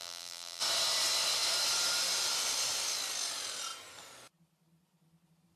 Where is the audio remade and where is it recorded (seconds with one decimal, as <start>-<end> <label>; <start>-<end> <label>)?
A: 0.0-0.6 remade; 0.6-5.6 recorded

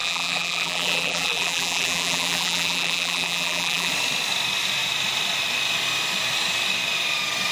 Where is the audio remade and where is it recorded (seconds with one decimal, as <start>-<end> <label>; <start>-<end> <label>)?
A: 0.0-3.9 remade; 3.9-7.5 recorded

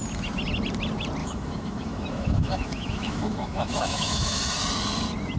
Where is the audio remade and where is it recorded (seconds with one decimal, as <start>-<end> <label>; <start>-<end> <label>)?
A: 0.0-1.2 recorded; 1.2-4.4 remade; 4.4-5.4 recorded

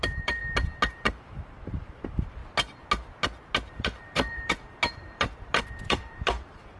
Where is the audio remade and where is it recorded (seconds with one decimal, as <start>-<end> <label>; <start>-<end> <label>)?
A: 0.0-0.4 remade; 0.4-0.9 recorded; 0.9-2.4 remade; 2.4-3.7 recorded; 3.7-6.8 remade

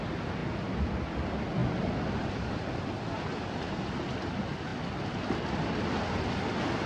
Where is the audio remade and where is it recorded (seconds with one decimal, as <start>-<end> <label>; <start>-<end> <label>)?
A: 0.0-6.9 recorded

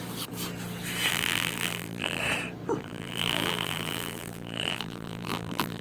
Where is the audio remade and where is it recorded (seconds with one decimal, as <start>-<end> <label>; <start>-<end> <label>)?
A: 0.0-1.1 recorded; 1.1-2.2 remade; 2.2-2.8 recorded; 2.8-5.8 remade

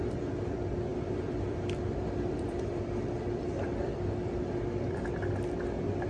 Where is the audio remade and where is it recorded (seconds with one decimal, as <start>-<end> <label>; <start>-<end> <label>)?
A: 0.0-0.9 recorded; 0.9-4.6 remade; 4.6-6.1 recorded